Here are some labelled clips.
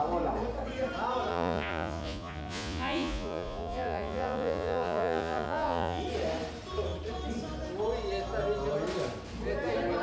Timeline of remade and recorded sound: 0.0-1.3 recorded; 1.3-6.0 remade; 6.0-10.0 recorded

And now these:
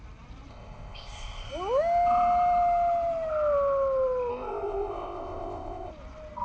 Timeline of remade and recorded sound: 0.0-0.5 recorded; 0.5-1.5 remade; 1.5-4.3 recorded; 4.3-5.9 remade; 5.9-6.4 recorded

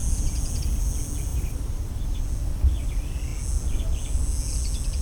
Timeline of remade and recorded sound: 0.0-1.3 recorded; 1.3-2.2 remade; 2.2-5.0 recorded